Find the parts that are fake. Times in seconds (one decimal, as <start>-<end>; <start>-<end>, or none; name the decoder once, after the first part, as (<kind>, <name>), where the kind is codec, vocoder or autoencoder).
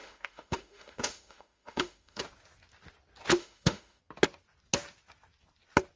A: 0.0-2.2 (autoencoder, DAC-VAE); 3.4-4.0